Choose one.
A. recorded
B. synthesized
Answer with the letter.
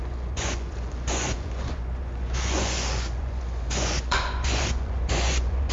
B